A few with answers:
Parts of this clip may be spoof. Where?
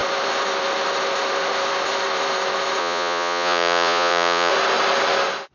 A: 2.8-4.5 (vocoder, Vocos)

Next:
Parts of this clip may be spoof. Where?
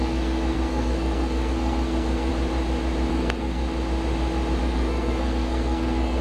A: 0.0-2.3 (codec, SNAC); 3.1-3.6; 4.6-6.2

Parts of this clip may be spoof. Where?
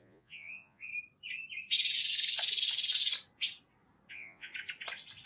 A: 0.0-0.9 (vocoder, Vocos); 4.1-4.5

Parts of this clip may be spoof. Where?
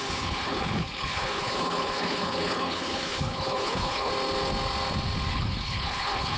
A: 0.0-4.1 (codec, HILCodec); 5.3-6.4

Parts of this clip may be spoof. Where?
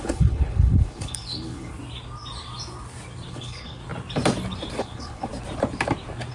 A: 0.0-1.7 (codec, HILCodec); 3.3-3.8; 4.8-5.3